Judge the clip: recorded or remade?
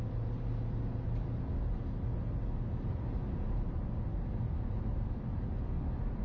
recorded